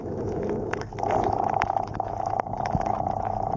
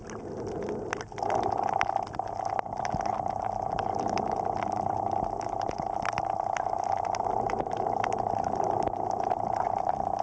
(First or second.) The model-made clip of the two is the first